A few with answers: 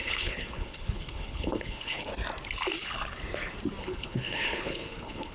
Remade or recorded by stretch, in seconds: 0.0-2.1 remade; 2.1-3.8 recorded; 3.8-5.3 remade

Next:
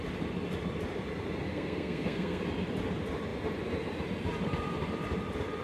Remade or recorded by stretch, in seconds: 0.0-1.5 recorded; 1.5-2.4 remade; 2.4-5.6 recorded